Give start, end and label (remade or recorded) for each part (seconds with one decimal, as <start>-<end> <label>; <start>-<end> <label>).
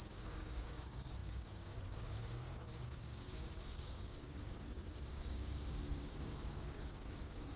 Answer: 0.0-7.6 remade